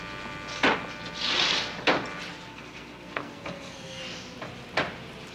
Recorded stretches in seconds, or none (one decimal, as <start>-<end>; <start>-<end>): 0.0-2.5; 4.0-5.3